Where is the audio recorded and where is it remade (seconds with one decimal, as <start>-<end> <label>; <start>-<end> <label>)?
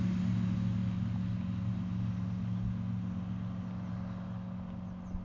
0.0-5.2 recorded